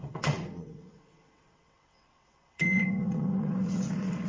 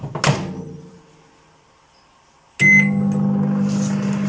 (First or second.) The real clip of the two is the second